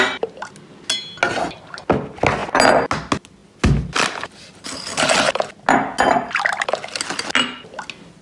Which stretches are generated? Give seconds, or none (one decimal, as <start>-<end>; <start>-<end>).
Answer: none